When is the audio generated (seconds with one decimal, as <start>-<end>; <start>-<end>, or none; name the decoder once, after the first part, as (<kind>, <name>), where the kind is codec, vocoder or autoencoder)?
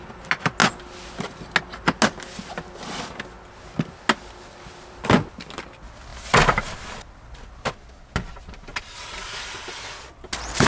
none